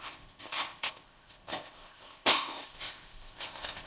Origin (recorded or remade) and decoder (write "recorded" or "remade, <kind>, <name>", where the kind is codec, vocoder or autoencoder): remade, codec, ZipCodec